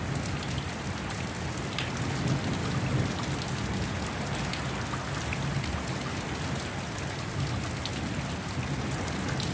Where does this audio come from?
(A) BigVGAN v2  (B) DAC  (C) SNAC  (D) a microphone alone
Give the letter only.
D